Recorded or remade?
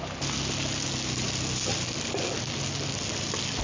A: recorded